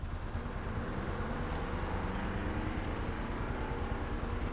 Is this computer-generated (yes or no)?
no